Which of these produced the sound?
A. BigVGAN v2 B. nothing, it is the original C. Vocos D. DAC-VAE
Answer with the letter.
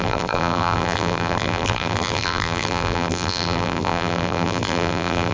A